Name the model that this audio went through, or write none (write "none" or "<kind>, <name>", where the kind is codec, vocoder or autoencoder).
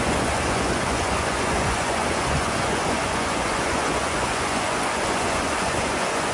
vocoder, Vocos